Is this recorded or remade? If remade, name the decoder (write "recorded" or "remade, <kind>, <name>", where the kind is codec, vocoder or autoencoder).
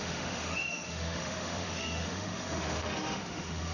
remade, autoencoder, DAC-VAE